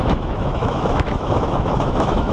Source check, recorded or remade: remade